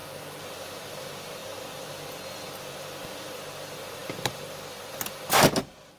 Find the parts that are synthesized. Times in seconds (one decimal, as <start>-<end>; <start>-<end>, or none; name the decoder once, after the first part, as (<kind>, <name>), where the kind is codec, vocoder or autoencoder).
0.0-6.0 (vocoder, BigVGAN v2)